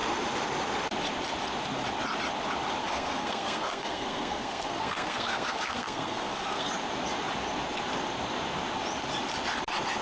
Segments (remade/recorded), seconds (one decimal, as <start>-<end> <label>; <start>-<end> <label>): 0.0-2.8 recorded; 2.8-6.7 remade; 6.7-10.0 recorded

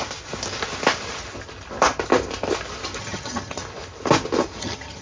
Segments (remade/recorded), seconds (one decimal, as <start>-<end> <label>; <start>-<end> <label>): 0.0-3.0 recorded; 3.0-3.6 remade; 3.6-4.6 recorded; 4.6-5.0 remade